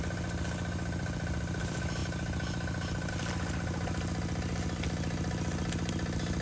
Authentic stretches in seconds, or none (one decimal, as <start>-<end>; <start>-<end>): 0.0-6.4